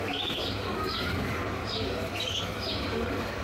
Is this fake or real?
fake